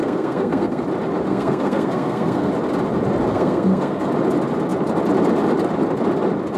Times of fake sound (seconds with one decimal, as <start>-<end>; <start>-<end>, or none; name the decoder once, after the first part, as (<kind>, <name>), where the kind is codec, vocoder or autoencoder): 0.0-0.8 (codec, SNAC); 1.3-2.5; 3.3-4.1